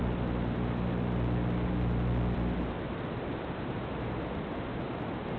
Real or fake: real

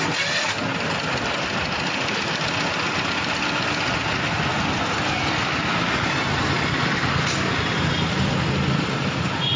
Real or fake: real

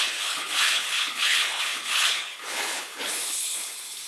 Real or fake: fake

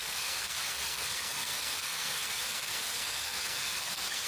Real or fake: fake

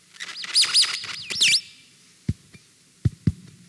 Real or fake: real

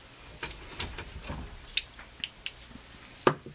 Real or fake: real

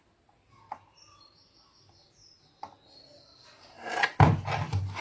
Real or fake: real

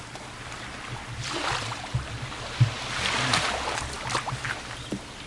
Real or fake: real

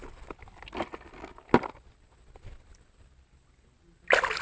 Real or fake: real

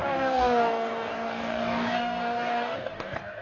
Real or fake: fake